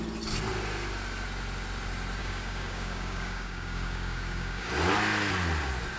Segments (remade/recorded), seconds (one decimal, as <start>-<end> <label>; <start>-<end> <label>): 0.0-2.2 recorded; 2.2-4.7 remade; 4.7-6.0 recorded